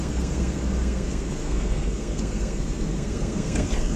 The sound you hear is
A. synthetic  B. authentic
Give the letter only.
A